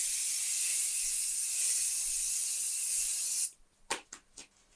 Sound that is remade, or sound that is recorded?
recorded